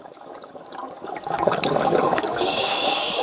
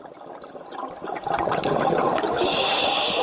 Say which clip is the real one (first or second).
second